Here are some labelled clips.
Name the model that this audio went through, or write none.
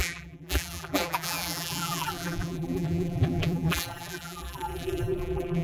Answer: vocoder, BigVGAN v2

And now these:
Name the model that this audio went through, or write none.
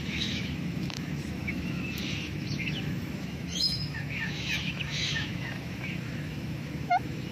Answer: autoencoder, DAC-VAE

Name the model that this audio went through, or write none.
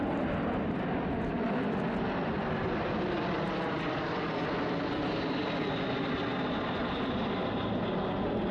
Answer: none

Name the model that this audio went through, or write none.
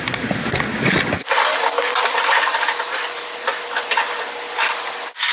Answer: none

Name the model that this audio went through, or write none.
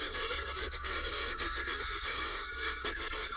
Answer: codec, SNAC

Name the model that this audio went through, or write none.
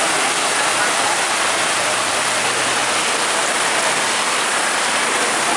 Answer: none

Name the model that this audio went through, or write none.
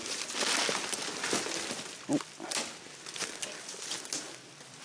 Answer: none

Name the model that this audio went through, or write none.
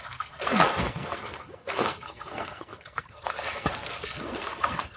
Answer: codec, SNAC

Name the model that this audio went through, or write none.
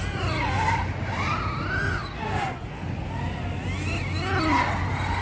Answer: none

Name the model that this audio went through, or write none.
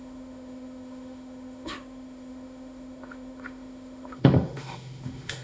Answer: autoencoder, DAC-VAE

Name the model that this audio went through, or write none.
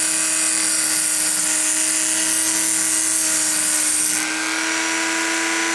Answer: none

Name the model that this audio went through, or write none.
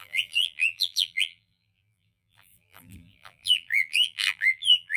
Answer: vocoder, BigVGAN v2